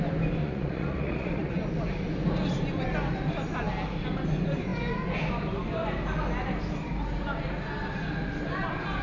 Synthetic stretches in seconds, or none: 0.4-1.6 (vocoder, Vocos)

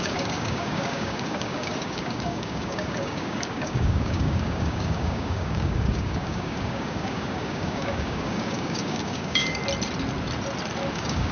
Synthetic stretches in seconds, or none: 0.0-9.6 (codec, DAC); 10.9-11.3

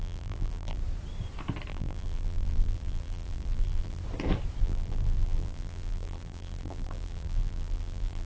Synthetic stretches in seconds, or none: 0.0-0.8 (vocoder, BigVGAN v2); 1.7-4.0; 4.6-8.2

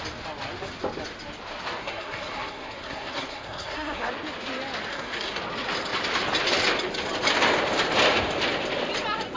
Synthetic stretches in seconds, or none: 1.8-4.1 (codec, SNAC); 4.9-5.4